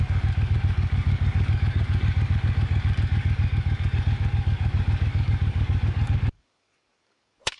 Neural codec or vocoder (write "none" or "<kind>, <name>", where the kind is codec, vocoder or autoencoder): codec, DAC